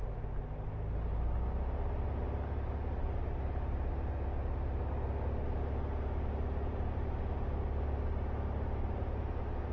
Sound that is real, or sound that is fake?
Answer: real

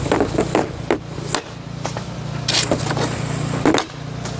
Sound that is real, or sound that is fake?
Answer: real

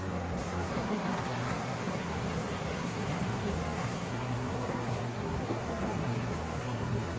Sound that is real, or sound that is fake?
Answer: fake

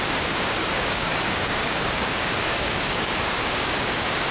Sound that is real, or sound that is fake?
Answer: fake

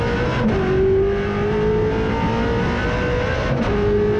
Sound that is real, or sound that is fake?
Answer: real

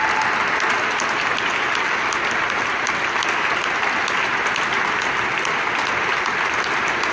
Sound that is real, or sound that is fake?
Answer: real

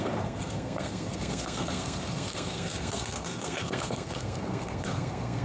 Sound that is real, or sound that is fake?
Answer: fake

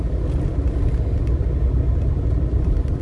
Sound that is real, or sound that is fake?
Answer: real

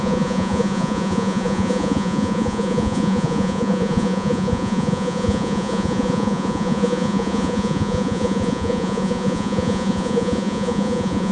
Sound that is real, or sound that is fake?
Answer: fake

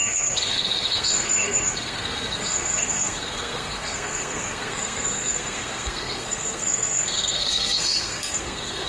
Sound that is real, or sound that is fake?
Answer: fake